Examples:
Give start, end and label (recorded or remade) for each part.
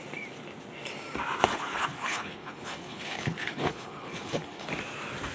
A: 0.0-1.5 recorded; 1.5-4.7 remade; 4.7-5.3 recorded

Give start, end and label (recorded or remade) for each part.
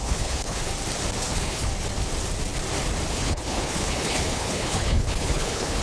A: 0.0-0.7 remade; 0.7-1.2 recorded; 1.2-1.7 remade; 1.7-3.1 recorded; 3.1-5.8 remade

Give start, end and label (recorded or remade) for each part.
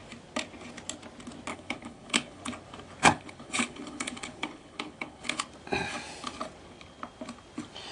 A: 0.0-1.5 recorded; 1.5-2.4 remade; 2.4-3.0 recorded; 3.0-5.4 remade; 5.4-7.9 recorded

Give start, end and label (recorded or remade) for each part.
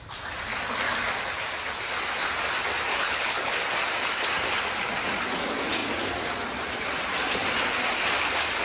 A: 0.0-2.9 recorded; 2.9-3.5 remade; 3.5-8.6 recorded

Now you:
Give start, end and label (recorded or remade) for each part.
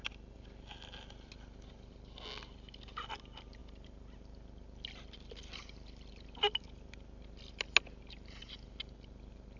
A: 0.0-9.6 recorded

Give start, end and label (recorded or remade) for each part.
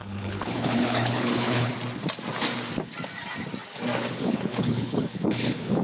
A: 0.0-1.7 remade; 1.7-4.1 recorded; 4.1-5.8 remade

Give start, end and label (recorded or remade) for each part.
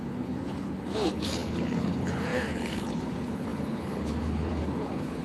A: 0.0-5.2 remade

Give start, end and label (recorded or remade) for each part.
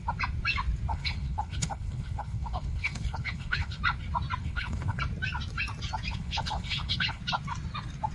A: 0.0-0.9 recorded; 0.9-3.8 remade; 3.8-4.4 recorded; 4.4-5.0 remade; 5.0-6.1 recorded; 6.1-7.2 remade; 7.2-8.1 recorded